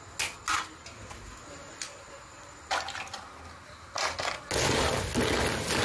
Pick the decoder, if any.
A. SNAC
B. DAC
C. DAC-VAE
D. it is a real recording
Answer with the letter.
D